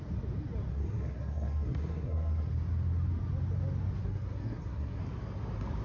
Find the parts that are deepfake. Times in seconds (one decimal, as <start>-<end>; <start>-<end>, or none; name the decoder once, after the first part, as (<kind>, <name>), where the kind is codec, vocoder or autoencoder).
0.7-2.5 (codec, SNAC); 4.0-5.0